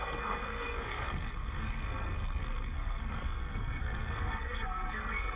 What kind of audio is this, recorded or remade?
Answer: remade